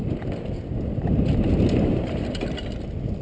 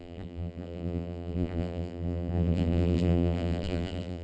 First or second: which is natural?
first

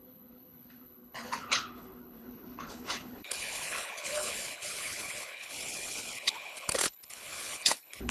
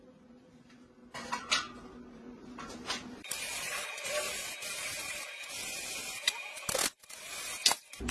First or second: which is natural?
second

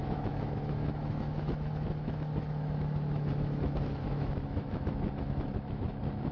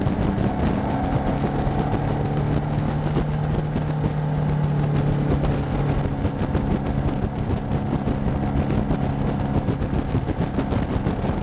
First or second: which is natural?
second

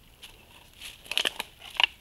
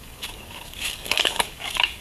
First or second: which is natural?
first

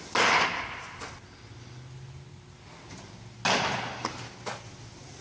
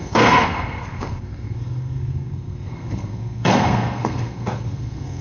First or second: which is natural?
first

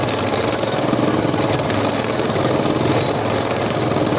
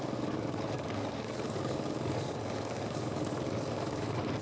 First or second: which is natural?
first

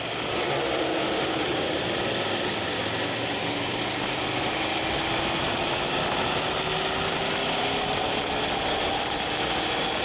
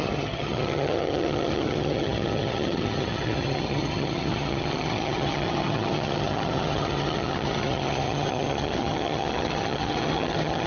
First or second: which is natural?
first